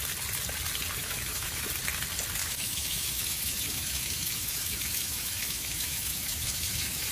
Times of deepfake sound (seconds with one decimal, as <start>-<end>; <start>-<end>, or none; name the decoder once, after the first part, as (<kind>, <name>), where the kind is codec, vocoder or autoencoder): 1.0-1.6 (autoencoder, DAC-VAE); 2.4-7.1